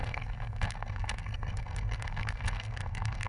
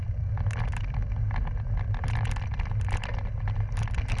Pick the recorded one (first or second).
second